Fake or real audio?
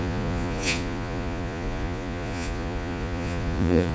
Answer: fake